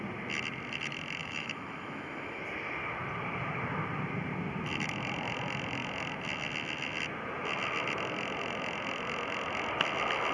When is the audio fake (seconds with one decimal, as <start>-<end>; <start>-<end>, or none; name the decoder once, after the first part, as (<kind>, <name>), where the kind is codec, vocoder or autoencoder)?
1.2-2.4 (autoencoder, DAC-VAE)